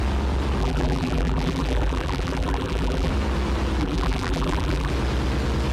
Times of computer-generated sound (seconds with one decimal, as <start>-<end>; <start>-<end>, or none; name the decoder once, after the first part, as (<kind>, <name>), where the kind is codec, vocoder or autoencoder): 0.6-3.1 (vocoder, BigVGAN v2); 3.8-4.9